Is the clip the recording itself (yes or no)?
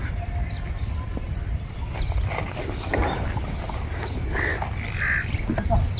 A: yes